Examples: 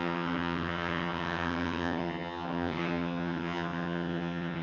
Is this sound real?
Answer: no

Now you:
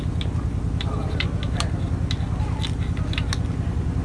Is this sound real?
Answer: yes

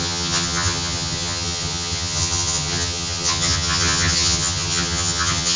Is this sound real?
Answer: no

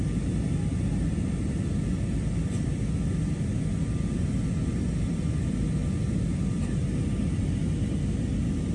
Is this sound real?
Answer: yes